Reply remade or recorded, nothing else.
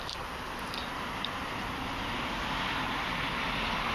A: recorded